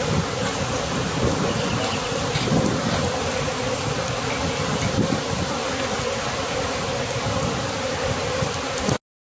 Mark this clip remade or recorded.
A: recorded